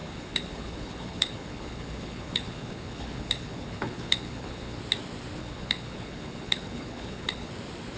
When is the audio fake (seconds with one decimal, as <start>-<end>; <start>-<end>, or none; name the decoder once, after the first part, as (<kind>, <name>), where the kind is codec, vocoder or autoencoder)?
0.0-4.8 (codec, HILCodec); 5.4-7.5

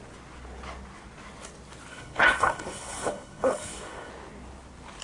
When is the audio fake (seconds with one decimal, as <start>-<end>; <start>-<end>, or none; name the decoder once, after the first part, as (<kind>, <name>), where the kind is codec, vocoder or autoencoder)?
1.9-4.1 (codec, HILCodec)

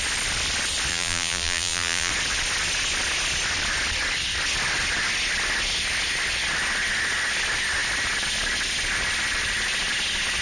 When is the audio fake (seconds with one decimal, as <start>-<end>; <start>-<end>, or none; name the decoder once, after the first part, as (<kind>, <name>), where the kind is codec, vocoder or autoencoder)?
0.9-2.1 (vocoder, BigVGAN v2)

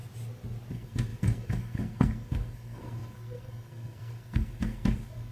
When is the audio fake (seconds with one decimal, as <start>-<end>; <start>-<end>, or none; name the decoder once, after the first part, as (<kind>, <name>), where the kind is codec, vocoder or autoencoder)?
0.7-5.3 (codec, SNAC)

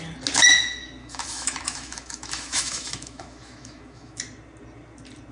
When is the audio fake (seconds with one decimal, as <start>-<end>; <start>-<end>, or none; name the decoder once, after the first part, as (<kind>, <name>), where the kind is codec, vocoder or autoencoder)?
1.0-4.2 (autoencoder, DAC-VAE)

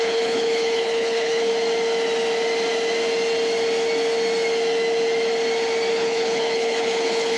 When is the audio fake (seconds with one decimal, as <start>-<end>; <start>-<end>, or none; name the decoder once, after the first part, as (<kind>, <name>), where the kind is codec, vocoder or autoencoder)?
0.0-1.5 (codec, HILCodec); 5.9-7.4

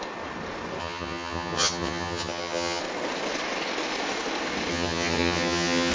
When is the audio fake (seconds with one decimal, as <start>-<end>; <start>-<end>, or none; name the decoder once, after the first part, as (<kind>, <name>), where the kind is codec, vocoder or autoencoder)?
0.8-2.8 (vocoder, HiFi-GAN); 4.7-5.9